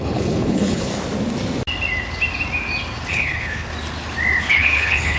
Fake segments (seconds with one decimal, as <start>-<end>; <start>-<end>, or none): 0.0-0.9; 3.1-3.7; 4.4-5.2